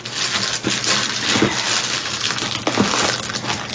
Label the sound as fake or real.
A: real